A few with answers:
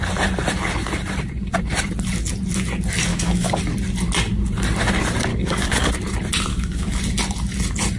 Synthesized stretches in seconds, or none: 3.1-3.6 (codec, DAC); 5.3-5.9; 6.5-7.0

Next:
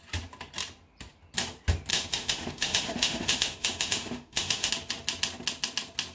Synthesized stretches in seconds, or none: 1.9-4.7 (autoencoder, DAC-VAE)

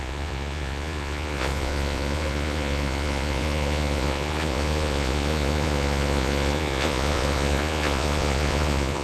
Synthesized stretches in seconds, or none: 0.0-9.0 (vocoder, Vocos)

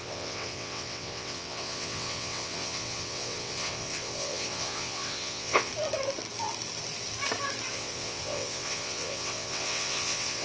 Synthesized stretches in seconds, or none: 0.0-5.7 (vocoder, WaveNeXt); 7.7-10.4

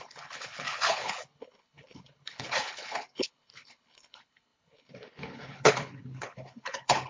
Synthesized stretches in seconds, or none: 0.0-7.1 (codec, HILCodec)

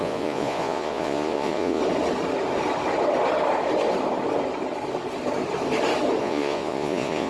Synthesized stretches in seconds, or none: 0.0-1.8 (vocoder, Vocos); 6.2-7.3

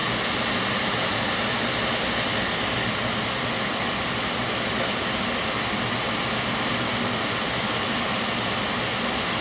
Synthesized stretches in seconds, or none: none

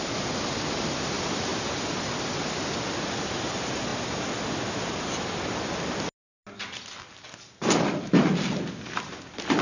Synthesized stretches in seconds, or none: none